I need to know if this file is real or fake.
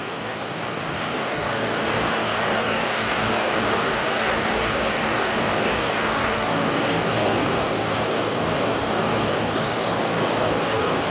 fake